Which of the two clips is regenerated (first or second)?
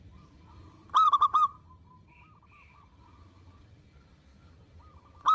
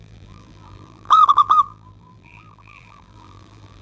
second